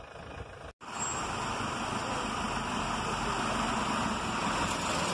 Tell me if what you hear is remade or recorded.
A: recorded